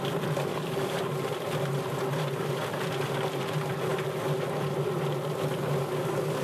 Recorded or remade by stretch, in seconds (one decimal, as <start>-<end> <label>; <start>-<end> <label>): 0.0-0.5 recorded; 0.5-1.0 remade; 1.0-6.4 recorded